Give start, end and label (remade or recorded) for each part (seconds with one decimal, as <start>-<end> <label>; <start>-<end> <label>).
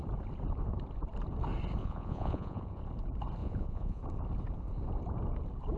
0.0-1.8 recorded; 1.8-2.8 remade; 2.8-3.4 recorded; 3.4-4.0 remade; 4.0-5.8 recorded